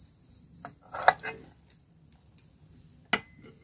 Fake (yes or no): no